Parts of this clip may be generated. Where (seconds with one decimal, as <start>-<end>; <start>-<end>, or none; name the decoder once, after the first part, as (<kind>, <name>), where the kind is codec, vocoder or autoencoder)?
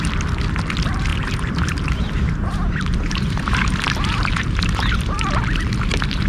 1.1-4.9 (vocoder, BigVGAN v2)